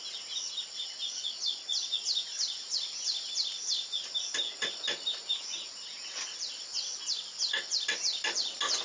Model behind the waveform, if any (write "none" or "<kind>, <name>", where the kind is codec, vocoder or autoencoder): none